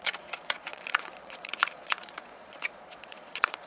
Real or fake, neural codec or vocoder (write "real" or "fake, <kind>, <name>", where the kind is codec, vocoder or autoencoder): fake, vocoder, Vocos